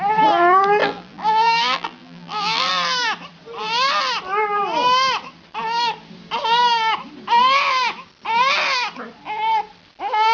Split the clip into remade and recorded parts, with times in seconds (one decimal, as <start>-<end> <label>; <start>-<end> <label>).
0.0-0.8 recorded; 0.8-2.7 remade; 2.7-10.3 recorded